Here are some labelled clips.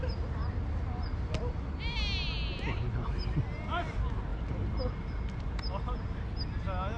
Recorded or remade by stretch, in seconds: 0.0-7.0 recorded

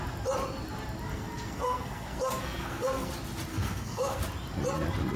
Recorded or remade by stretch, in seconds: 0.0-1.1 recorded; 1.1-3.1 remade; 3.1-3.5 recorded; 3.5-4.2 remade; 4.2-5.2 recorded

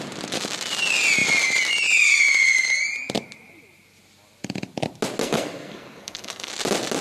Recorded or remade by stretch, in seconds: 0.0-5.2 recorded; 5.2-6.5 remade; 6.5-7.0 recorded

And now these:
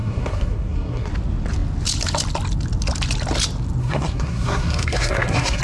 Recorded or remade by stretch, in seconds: 0.0-1.1 remade; 1.1-3.8 recorded; 3.8-5.6 remade